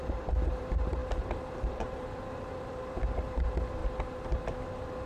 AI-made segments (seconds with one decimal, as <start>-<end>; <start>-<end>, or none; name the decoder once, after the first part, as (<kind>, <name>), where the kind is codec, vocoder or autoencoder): 0.0-5.1 (vocoder, BigVGAN v2)

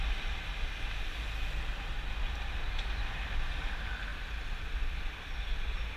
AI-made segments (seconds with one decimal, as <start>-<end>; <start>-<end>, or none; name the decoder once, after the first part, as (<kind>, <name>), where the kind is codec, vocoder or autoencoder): none

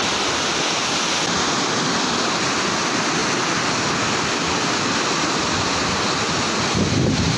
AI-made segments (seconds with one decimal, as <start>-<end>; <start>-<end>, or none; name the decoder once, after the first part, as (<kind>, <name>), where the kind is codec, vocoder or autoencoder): none